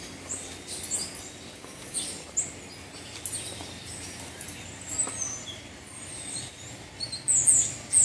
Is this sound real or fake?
real